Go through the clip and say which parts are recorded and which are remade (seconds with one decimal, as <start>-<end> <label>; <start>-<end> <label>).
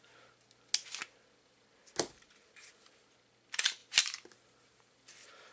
0.0-5.5 recorded